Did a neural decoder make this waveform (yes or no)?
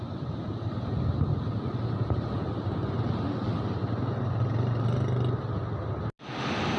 no